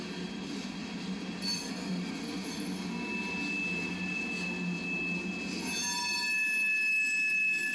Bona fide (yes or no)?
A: yes